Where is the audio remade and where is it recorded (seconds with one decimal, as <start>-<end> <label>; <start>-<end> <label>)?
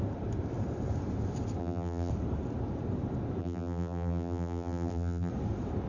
0.0-1.6 recorded; 1.6-2.1 remade; 2.1-3.4 recorded; 3.4-5.3 remade; 5.3-5.9 recorded